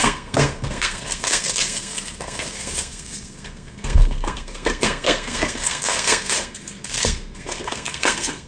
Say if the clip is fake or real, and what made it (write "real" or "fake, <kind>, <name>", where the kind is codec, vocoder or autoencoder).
fake, codec, SNAC